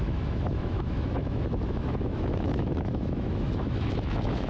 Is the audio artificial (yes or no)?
yes